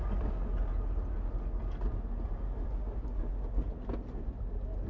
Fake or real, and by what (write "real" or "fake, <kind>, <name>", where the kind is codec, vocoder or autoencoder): real